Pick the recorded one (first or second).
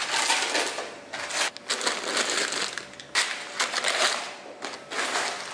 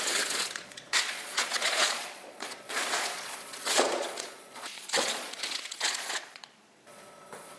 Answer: first